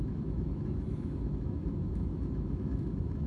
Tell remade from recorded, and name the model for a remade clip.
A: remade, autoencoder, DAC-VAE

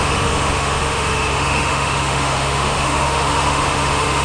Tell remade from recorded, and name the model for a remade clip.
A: remade, autoencoder, DAC-VAE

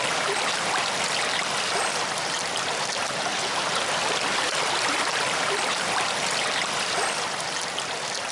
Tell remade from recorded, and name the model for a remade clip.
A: recorded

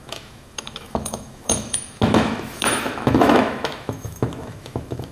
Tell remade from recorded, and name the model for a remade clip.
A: remade, autoencoder, DAC-VAE